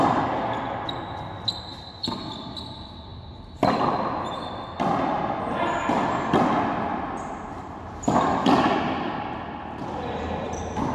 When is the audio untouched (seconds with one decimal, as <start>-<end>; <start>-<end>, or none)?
0.0-10.9